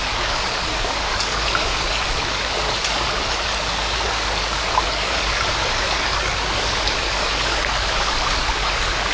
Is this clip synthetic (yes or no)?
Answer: yes